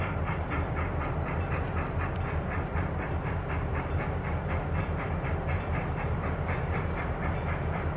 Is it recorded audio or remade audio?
remade